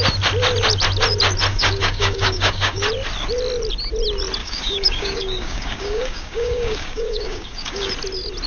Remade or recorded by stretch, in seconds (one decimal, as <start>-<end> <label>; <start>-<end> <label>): 0.0-1.5 recorded; 1.5-2.8 remade; 2.8-4.4 recorded; 4.4-7.9 remade; 7.9-8.5 recorded